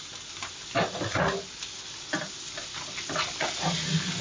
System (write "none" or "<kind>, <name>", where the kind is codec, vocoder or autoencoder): none